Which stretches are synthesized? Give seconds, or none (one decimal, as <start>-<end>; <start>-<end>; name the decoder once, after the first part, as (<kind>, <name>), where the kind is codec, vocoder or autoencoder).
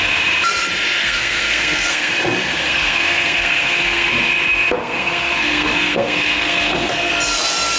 1.0-2.1 (codec, SNAC); 2.6-4.1; 4.8-7.1